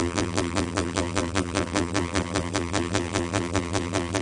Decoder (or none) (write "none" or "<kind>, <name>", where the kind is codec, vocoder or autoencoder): vocoder, BigVGAN v2